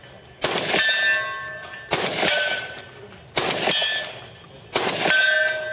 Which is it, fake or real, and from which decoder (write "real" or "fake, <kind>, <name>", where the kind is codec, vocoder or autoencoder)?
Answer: real